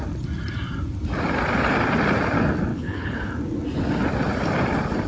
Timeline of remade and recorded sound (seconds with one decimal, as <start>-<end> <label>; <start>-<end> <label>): 0.0-2.7 recorded; 2.7-3.3 remade; 3.3-5.1 recorded